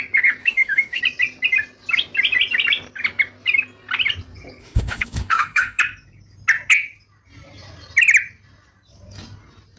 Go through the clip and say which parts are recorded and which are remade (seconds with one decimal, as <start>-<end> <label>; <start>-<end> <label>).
0.0-0.4 recorded; 0.4-1.0 remade; 1.0-4.6 recorded; 4.6-5.8 remade; 5.8-9.8 recorded